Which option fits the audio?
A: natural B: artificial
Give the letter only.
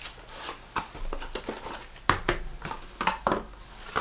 A